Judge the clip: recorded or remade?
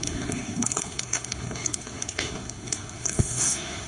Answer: remade